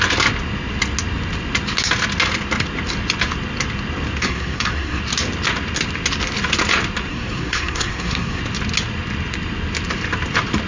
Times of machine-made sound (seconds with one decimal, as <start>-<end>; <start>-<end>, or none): 4.2-5.0; 7.1-8.4